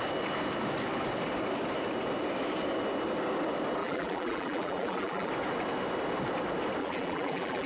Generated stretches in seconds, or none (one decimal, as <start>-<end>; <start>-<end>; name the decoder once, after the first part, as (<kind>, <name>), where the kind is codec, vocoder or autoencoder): 3.8-5.3 (vocoder, BigVGAN v2); 6.8-7.7